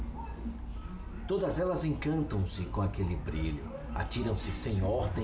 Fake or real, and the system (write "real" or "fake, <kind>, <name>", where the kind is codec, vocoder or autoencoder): real